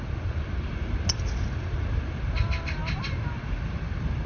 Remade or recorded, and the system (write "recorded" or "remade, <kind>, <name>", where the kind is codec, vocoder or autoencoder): recorded